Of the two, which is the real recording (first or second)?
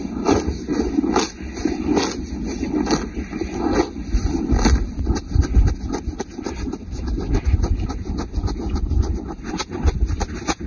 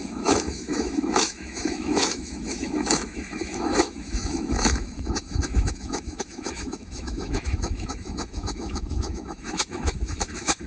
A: first